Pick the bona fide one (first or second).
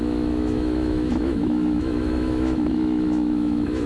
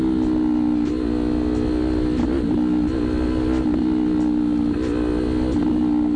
second